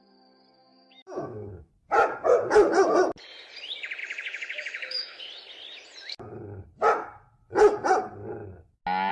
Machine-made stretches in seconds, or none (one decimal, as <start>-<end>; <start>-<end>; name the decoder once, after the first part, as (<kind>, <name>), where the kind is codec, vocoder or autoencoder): 0.6-1.7 (autoencoder, DAC-VAE); 4.0-5.2